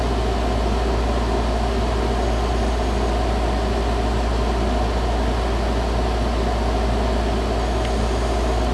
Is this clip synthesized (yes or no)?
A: no